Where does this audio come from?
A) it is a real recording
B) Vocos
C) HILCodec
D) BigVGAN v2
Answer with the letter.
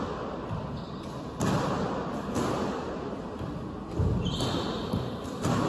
A